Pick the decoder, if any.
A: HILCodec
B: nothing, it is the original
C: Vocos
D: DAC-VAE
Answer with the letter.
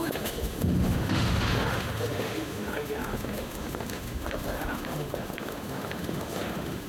D